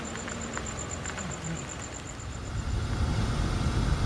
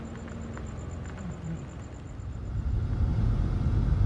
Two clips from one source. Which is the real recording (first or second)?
second